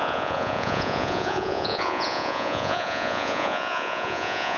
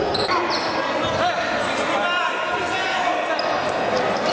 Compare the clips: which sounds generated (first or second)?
first